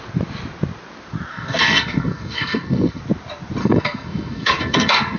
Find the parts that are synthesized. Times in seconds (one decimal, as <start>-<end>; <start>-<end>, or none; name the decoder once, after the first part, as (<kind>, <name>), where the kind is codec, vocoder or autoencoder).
1.3-3.0 (codec, SNAC); 3.6-5.2